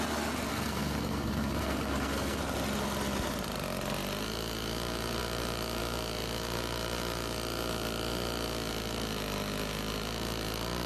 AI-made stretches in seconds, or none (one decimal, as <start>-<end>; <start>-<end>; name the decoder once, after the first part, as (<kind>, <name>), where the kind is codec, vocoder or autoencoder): 0.5-2.4 (codec, SNAC)